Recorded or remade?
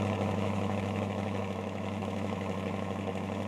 remade